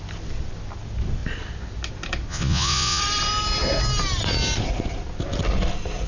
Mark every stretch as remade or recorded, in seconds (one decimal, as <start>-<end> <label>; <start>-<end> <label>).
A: 0.0-2.3 recorded; 2.3-3.0 remade; 3.0-6.1 recorded